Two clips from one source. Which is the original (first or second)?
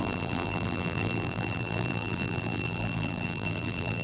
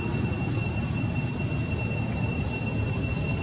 second